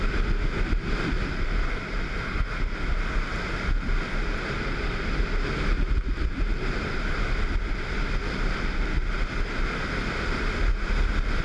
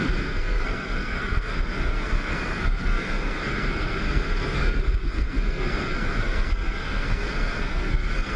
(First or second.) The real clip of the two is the first